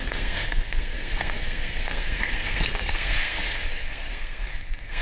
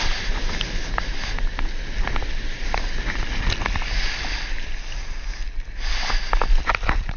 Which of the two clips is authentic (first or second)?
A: second